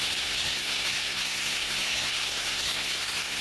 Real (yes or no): no